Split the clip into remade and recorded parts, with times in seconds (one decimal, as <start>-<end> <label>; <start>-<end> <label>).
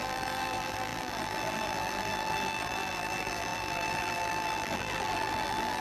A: 0.0-5.8 remade